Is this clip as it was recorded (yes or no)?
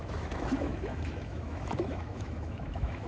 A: no